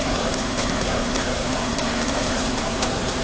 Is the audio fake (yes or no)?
yes